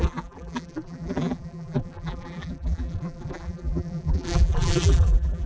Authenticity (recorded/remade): remade